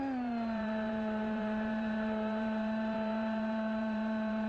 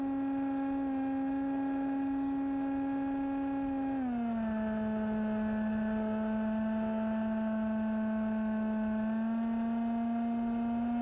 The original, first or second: second